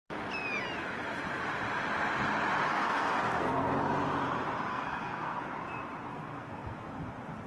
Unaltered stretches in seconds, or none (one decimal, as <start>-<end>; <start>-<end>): 0.0-2.7; 3.7-4.7; 5.4-6.1; 6.9-7.5